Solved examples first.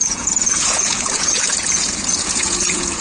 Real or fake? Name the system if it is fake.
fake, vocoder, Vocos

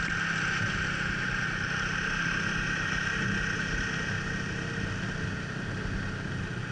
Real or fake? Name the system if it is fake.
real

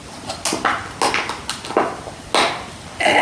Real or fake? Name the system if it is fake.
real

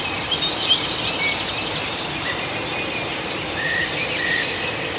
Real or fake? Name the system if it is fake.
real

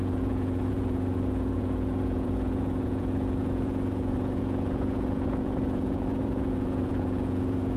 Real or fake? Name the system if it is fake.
fake, vocoder, Vocos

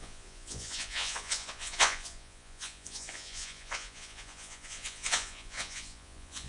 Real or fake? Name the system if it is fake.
fake, vocoder, Vocos